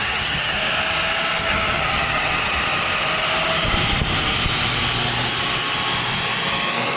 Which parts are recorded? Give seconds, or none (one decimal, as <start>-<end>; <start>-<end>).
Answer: 0.6-1.4; 2.6-7.0